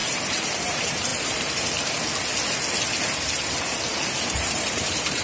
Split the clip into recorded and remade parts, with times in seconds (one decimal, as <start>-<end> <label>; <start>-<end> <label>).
0.0-1.1 remade; 1.1-4.2 recorded; 4.2-5.2 remade